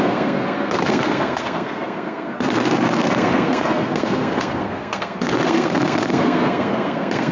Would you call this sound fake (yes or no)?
yes